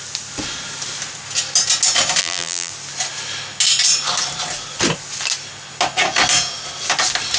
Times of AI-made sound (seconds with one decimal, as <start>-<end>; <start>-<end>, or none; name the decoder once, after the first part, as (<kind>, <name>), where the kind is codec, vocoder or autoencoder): 2.2-2.7 (vocoder, BigVGAN v2)